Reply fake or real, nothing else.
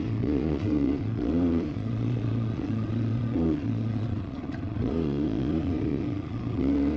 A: fake